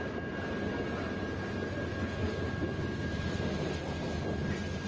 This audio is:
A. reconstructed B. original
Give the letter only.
B